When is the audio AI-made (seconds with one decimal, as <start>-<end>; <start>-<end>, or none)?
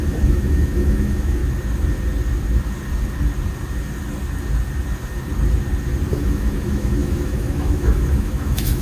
0.0-1.4; 6.1-8.8